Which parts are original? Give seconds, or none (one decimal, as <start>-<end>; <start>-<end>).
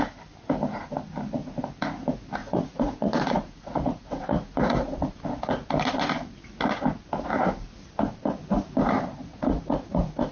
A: 0.0-2.4; 5.2-9.2